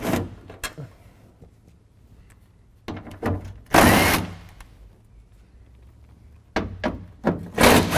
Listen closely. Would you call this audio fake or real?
real